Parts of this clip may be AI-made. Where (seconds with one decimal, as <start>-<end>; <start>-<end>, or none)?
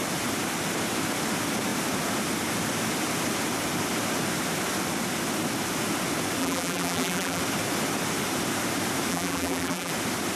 6.4-7.4; 9.1-9.9